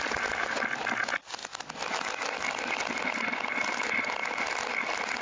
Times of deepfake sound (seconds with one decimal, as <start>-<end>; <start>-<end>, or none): none